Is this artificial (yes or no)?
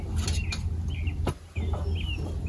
no